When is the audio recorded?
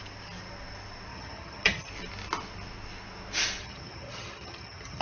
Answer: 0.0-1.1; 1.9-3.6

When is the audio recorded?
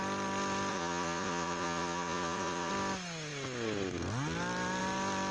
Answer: 0.0-0.7; 2.7-5.3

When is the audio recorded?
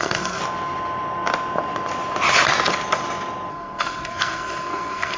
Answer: 0.4-3.5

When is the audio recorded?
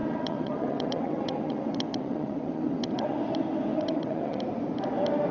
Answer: 3.2-3.7; 4.4-5.3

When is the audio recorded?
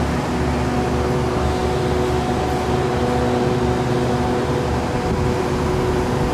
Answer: 0.0-6.3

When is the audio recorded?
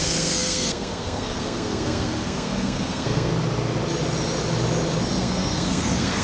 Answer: 3.3-5.2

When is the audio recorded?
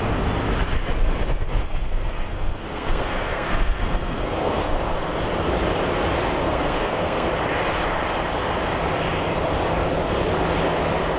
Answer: 0.0-1.6; 4.8-6.4; 7.3-11.2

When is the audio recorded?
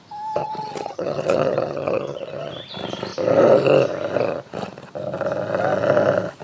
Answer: 0.0-0.4; 2.5-6.4